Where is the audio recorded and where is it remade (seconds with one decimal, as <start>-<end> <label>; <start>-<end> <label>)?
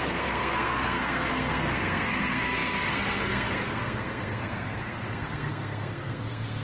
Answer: 0.0-6.6 remade